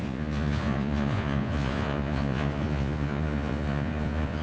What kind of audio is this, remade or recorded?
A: remade